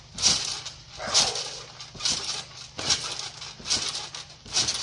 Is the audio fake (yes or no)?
no